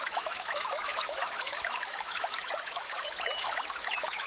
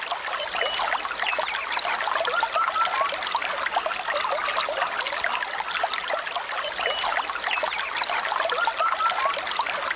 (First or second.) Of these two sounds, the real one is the second